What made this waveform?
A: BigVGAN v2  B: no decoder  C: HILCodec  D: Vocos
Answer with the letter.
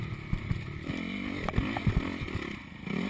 B